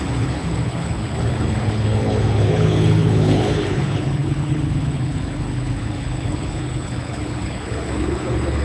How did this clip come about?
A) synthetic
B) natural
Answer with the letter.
A